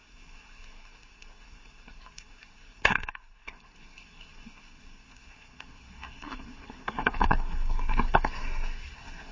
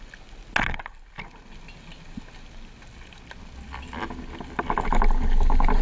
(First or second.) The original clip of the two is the second